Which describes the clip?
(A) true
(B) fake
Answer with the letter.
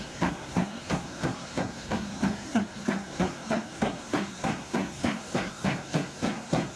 B